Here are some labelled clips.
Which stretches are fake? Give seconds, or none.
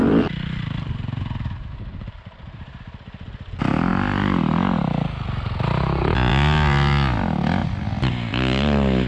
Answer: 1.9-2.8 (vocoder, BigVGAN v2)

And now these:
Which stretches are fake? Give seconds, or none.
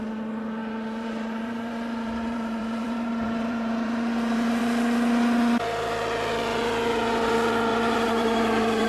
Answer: 0.6-4.6 (vocoder, BigVGAN v2); 6.5-7.3; 7.7-8.9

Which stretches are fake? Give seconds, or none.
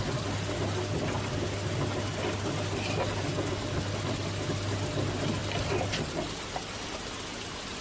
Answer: none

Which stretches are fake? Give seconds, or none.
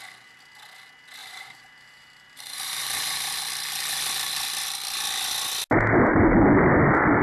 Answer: 1.2-3.4 (vocoder, BigVGAN v2)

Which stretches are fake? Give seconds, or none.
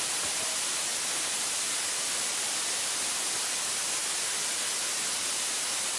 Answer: 0.9-4.5 (vocoder, BigVGAN v2)